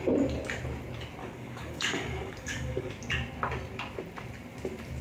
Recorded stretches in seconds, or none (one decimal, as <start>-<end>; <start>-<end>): 0.0-1.2; 2.9-5.0